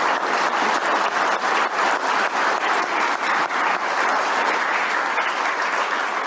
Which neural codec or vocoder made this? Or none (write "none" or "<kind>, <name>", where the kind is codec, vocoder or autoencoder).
none